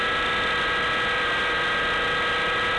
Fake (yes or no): no